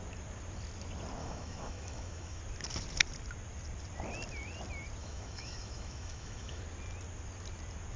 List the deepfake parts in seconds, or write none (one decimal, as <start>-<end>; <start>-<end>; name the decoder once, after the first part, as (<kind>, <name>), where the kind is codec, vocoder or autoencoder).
1.2-2.4 (autoencoder, DAC-VAE); 5.0-6.6